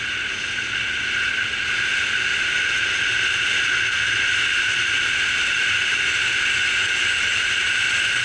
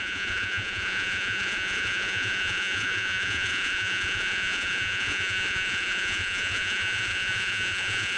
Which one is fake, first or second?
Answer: second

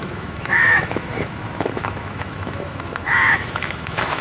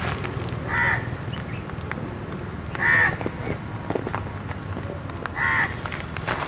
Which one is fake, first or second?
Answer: first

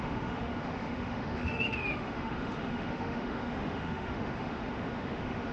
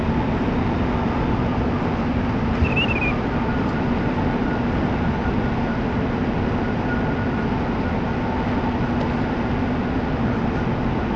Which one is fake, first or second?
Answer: first